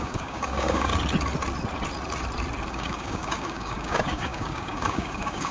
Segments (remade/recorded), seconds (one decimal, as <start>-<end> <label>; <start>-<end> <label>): 0.0-0.9 remade; 0.9-2.7 recorded; 2.7-5.5 remade